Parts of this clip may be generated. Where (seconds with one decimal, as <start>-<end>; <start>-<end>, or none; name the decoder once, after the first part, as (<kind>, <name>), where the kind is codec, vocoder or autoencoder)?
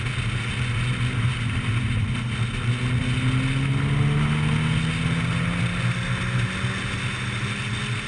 none